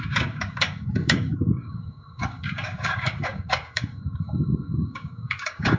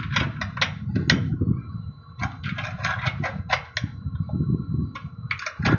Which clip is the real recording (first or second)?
second